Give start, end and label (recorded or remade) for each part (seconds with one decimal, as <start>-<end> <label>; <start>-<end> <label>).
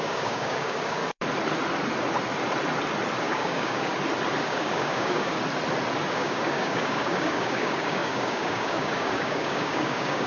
0.0-1.0 remade; 1.0-3.2 recorded; 3.2-3.9 remade; 3.9-4.4 recorded; 4.4-5.4 remade; 5.4-6.1 recorded; 6.1-10.3 remade